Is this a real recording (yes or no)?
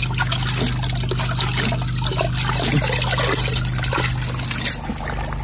yes